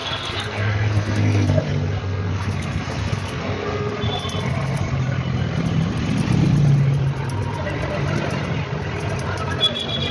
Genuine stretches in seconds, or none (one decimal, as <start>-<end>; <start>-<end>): 1.6-2.0; 3.9-10.1